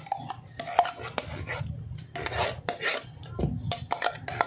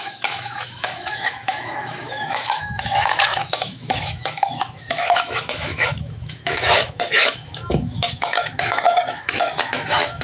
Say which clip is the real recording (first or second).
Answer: first